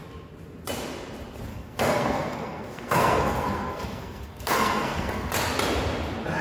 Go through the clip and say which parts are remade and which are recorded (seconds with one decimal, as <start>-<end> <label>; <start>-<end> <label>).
0.0-1.5 recorded; 1.5-5.3 remade; 5.3-6.4 recorded